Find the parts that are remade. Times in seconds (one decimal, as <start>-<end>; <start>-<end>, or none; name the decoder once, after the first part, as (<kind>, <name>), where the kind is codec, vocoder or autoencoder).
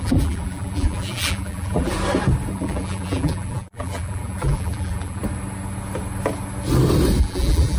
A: 0.0-1.9 (vocoder, BigVGAN v2); 2.5-5.2; 7.2-7.8